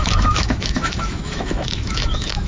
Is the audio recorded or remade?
remade